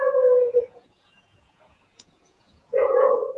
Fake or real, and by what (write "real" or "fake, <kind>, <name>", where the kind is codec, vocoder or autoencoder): fake, vocoder, Vocos